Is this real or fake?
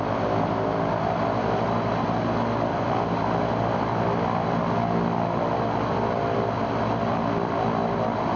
real